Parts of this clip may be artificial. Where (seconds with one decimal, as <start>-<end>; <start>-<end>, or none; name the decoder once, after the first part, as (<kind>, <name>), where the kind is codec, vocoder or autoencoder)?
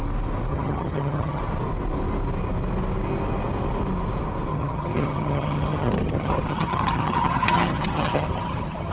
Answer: 0.5-1.4 (vocoder, HiFi-GAN); 4.5-8.9